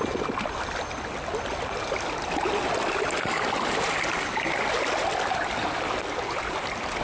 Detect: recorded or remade recorded